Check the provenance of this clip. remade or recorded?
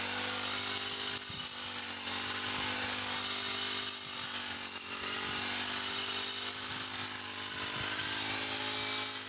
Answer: recorded